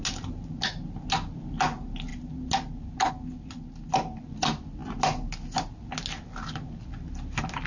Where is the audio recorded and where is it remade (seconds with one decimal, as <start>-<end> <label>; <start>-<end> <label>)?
0.0-7.7 recorded

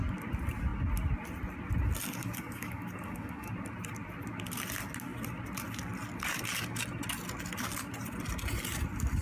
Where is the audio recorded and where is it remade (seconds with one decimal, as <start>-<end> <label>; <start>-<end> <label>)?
0.0-2.2 recorded; 2.2-3.5 remade; 3.5-9.2 recorded

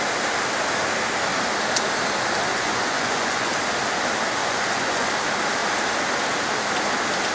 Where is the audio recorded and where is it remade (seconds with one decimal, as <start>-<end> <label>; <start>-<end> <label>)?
0.0-2.5 recorded; 2.5-3.5 remade; 3.5-4.4 recorded; 4.4-5.1 remade; 5.1-7.3 recorded

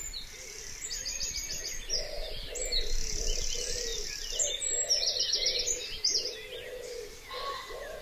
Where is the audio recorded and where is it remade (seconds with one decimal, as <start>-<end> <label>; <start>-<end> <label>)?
0.0-8.0 recorded

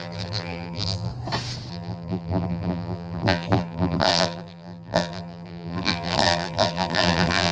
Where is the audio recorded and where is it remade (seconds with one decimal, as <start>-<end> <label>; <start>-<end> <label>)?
0.0-1.1 remade; 1.1-1.7 recorded; 1.7-7.5 remade